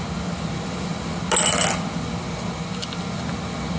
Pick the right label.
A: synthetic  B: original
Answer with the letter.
B